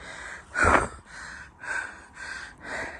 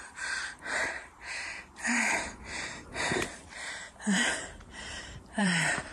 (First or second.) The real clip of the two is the first